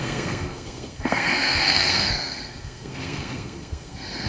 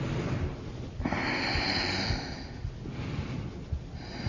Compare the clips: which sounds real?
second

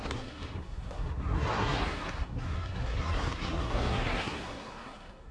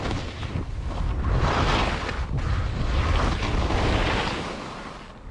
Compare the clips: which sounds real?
second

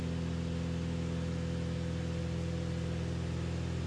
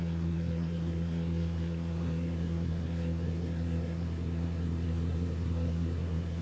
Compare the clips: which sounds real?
first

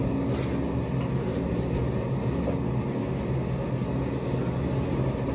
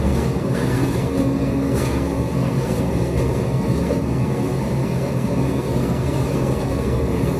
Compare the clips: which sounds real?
first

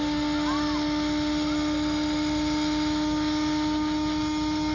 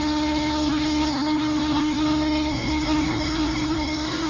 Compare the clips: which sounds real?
first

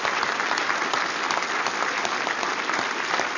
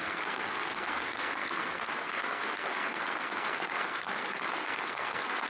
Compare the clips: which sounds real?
first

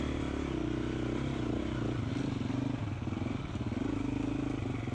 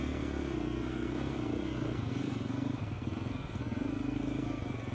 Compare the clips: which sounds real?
first